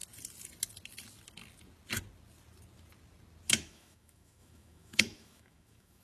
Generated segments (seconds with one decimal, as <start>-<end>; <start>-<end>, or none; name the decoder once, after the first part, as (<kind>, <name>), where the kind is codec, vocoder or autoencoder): 3.5-6.0 (autoencoder, DAC-VAE)